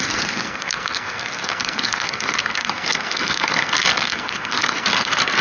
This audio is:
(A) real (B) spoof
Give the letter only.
B